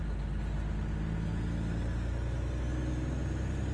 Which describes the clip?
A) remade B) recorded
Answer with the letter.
B